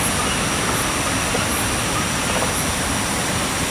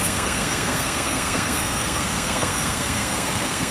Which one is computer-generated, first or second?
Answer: second